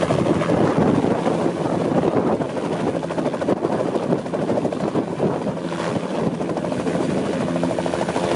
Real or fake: real